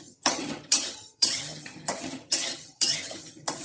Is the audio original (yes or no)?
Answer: no